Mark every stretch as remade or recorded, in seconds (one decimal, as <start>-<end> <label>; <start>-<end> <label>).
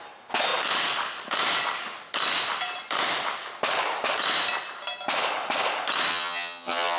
0.0-6.1 recorded; 6.1-7.0 remade